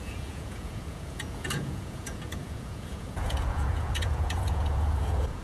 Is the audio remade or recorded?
remade